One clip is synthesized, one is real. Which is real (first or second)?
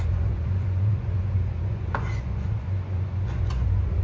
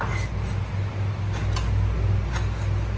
second